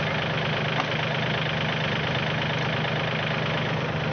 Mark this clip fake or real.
real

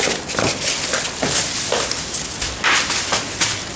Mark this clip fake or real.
real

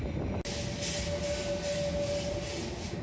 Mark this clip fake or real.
real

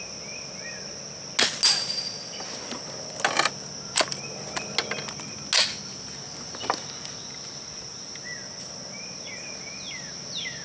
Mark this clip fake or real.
real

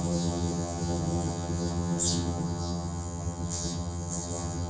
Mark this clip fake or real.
fake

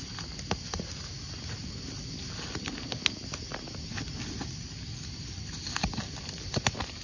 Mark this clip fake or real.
real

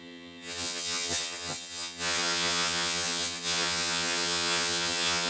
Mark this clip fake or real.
fake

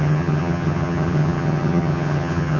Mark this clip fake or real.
fake